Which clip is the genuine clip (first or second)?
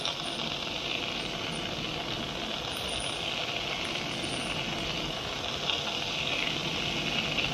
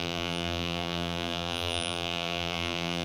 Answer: first